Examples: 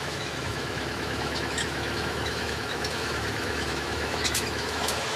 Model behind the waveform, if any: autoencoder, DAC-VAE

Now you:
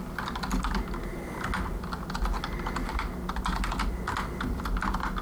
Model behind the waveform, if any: none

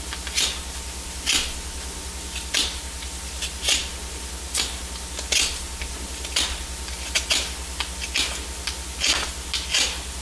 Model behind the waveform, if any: none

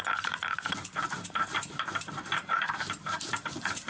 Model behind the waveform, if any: vocoder, BigVGAN v2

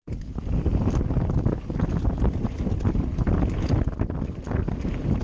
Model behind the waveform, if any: none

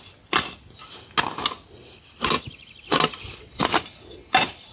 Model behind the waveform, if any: none